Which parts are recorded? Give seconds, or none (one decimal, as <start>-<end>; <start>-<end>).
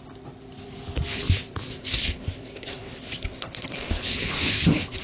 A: 0.0-1.8